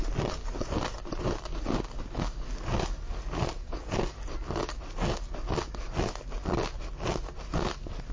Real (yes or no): yes